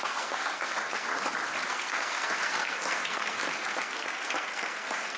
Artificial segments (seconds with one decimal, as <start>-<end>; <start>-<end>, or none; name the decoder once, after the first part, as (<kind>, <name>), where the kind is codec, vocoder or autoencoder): 0.0-1.1 (codec, SNAC); 1.7-5.2